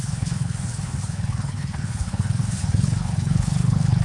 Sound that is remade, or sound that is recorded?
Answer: remade